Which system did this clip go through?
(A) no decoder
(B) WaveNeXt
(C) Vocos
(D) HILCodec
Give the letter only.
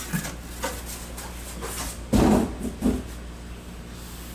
A